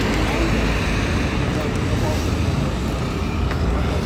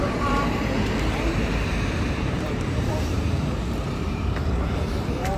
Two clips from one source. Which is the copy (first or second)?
second